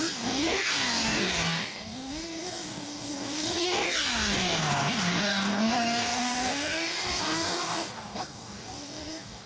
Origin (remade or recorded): remade